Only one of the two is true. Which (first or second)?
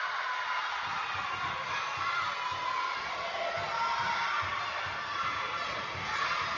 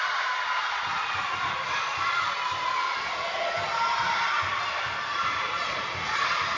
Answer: first